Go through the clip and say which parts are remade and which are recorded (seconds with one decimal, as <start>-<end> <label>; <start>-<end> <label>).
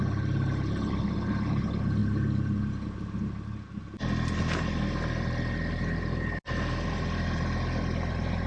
0.0-8.5 recorded